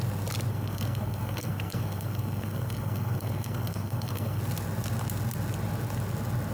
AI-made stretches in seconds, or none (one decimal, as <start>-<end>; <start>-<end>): 0.5-4.4